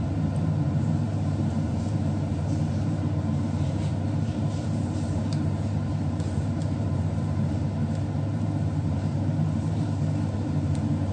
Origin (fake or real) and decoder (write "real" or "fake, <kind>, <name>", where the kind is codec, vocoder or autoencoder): fake, vocoder, BigVGAN v2